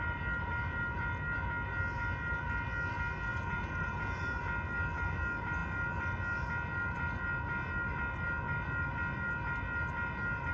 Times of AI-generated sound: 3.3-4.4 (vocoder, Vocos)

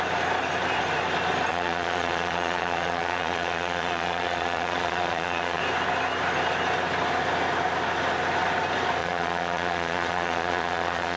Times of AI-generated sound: 1.5-5.6 (vocoder, Vocos); 9.0-11.2

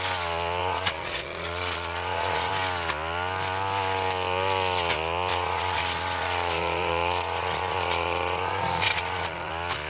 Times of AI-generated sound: 0.6-2.5 (vocoder, Vocos); 5.3-9.5

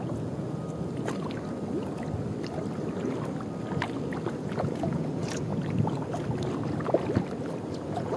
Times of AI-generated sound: 0.0-0.6 (vocoder, Vocos); 4.3-5.5; 7.7-8.2

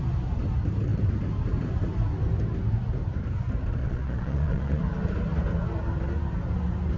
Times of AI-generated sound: 3.8-4.8 (vocoder, Vocos)